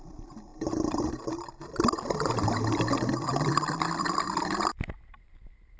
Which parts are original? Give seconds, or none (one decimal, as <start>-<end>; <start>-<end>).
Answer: 0.5-3.1